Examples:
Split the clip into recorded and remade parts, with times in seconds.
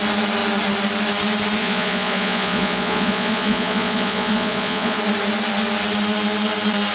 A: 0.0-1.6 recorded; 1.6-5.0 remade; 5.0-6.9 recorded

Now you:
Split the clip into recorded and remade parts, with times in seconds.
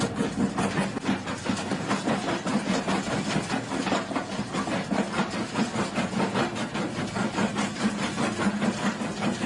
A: 0.0-9.5 recorded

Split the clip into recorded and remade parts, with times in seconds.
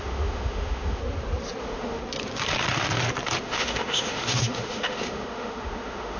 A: 0.0-1.0 remade; 1.0-1.6 recorded; 1.6-2.0 remade; 2.0-3.4 recorded; 3.4-6.2 remade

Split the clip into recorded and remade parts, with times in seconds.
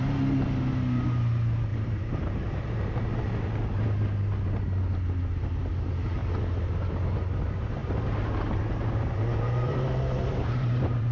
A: 0.0-1.7 recorded; 1.7-2.9 remade; 2.9-7.8 recorded; 7.8-11.1 remade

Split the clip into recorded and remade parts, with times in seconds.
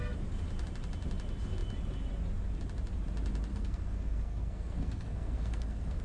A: 0.0-3.5 recorded; 3.5-6.0 remade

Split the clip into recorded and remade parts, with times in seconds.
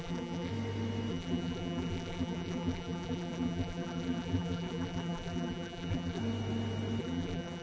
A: 0.0-0.5 remade; 0.5-1.1 recorded; 1.1-6.2 remade; 6.2-7.0 recorded; 7.0-7.6 remade